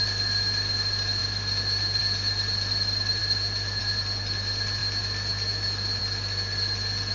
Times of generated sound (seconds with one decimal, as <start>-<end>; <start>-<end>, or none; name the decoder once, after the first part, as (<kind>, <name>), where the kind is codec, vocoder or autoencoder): none